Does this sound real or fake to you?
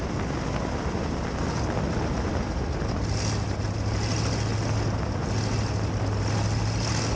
real